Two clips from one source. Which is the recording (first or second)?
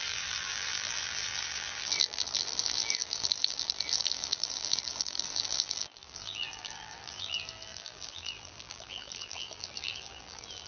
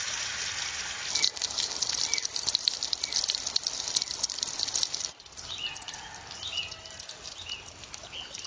second